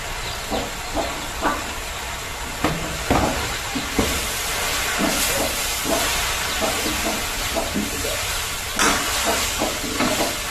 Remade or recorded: recorded